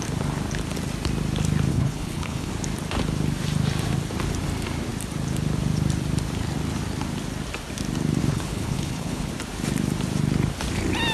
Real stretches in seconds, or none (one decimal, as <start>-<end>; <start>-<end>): 0.0-1.7; 2.5-8.2; 9.3-11.1